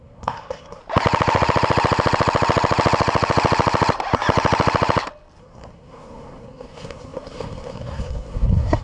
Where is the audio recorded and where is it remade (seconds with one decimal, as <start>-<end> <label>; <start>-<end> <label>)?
0.0-0.8 remade; 0.8-5.4 recorded; 5.4-8.8 remade

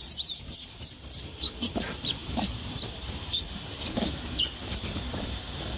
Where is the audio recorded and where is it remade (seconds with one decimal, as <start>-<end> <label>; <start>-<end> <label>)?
0.0-5.8 remade

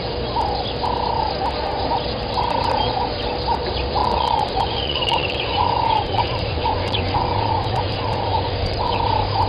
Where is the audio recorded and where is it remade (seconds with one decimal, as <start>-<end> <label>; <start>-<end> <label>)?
0.0-4.0 recorded; 4.0-9.0 remade; 9.0-9.5 recorded

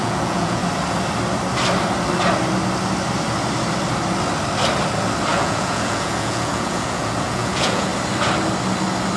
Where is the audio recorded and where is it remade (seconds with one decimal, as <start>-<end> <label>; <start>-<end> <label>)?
0.0-0.6 remade; 0.6-5.3 recorded; 5.3-7.9 remade; 7.9-9.2 recorded

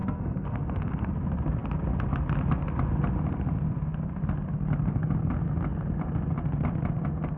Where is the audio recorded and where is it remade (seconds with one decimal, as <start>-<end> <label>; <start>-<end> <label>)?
0.0-1.1 remade; 1.1-7.4 recorded

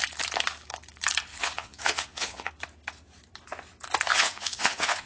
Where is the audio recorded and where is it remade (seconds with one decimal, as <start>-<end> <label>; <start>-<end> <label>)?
0.0-1.3 recorded; 1.3-2.5 remade; 2.5-4.1 recorded; 4.1-5.1 remade